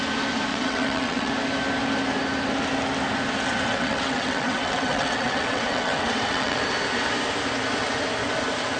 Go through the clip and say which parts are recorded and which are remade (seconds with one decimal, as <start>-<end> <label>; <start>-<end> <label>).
0.0-0.5 recorded; 0.5-1.3 remade; 1.3-3.7 recorded; 3.7-6.6 remade; 6.6-8.8 recorded